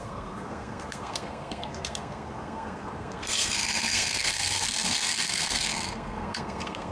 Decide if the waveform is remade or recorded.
remade